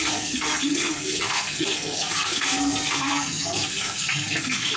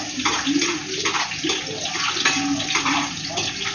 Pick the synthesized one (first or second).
first